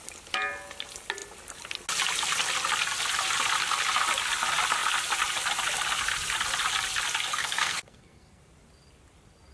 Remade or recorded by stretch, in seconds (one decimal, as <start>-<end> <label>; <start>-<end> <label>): 0.0-7.3 recorded; 7.3-8.4 remade; 8.4-9.5 recorded